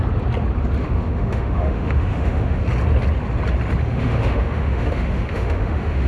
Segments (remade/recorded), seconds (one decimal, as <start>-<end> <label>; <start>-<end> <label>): 0.0-0.8 recorded; 0.8-2.6 remade; 2.6-3.9 recorded; 3.9-6.1 remade